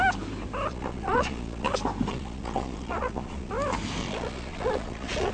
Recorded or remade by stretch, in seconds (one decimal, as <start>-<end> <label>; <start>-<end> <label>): 0.0-0.7 recorded; 0.7-1.7 remade; 1.7-2.1 recorded; 2.1-3.5 remade; 3.5-4.0 recorded; 4.0-5.3 remade